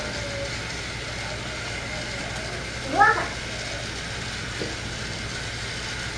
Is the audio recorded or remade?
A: recorded